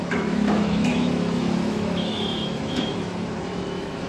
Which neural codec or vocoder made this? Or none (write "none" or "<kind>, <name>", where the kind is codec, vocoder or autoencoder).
autoencoder, DAC-VAE